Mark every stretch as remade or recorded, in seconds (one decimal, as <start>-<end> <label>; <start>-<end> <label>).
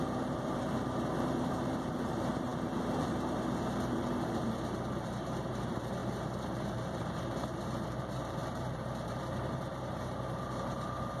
0.0-11.2 remade